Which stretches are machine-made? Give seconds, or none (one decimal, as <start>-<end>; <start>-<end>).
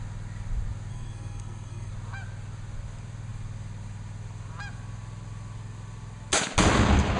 0.9-1.9